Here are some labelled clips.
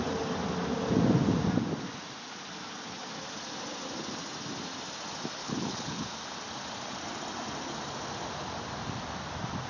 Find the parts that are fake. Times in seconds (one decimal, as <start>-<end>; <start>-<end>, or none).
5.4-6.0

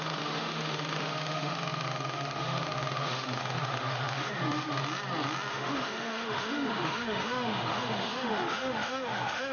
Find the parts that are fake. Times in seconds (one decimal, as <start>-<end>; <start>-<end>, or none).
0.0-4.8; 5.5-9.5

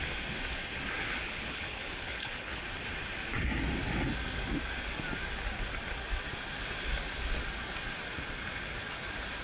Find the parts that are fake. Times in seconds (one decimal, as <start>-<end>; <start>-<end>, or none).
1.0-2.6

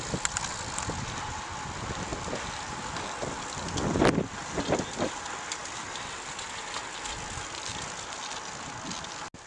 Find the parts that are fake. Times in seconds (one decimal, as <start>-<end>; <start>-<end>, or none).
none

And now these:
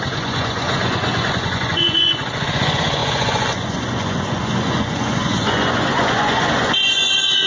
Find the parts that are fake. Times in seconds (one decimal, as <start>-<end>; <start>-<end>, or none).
0.0-7.5